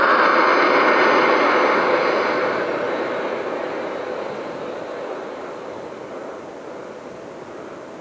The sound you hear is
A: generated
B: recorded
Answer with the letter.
B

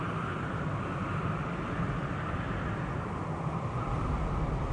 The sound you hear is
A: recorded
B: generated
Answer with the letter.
A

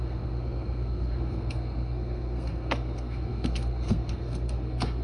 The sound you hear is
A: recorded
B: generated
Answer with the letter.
B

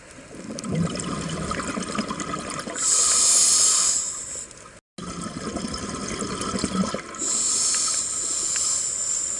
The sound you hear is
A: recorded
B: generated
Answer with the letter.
A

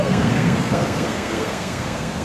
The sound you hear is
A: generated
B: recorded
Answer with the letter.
A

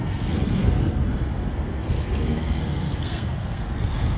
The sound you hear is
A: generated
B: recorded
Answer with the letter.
A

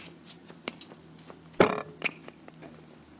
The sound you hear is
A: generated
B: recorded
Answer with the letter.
B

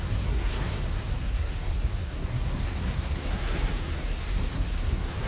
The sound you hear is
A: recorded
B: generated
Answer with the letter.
B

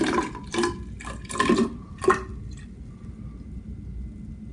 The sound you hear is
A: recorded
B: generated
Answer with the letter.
A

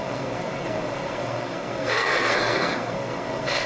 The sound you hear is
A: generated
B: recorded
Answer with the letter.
A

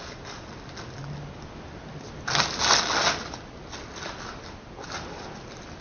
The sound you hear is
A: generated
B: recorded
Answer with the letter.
B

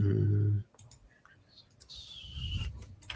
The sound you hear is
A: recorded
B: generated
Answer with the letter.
A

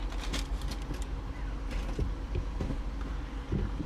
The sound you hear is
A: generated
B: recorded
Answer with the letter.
B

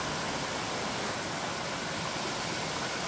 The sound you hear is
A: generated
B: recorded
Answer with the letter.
B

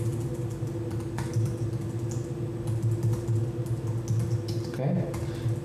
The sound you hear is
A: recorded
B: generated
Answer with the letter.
A